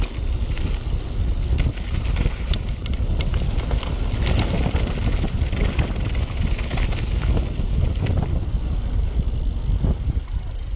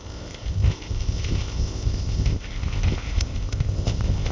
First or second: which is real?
first